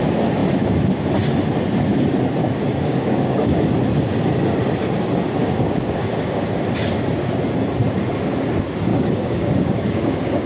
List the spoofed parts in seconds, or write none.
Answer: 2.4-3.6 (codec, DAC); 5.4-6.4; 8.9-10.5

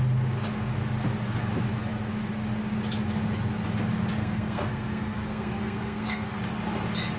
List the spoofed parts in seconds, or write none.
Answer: 4.2-6.4 (codec, SNAC)

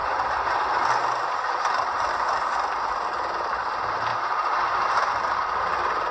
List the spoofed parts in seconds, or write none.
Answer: 0.0-2.1 (vocoder, BigVGAN v2); 4.1-5.4

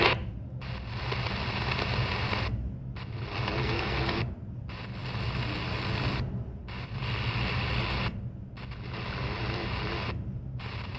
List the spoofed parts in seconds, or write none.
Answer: 3.6-4.3 (codec, SNAC)

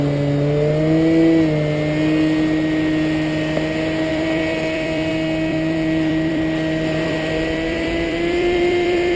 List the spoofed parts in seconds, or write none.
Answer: 4.1-5.1 (vocoder, BigVGAN v2); 5.5-9.2

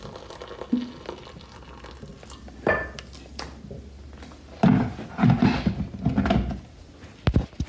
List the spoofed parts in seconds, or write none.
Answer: none

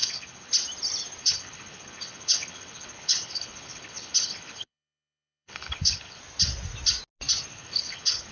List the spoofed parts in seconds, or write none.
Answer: 0.0-0.5 (codec, HILCodec); 1.2-6.2; 7.5-8.3

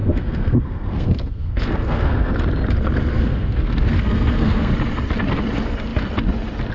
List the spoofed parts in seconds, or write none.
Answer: 0.0-2.3 (codec, SNAC); 3.1-4.7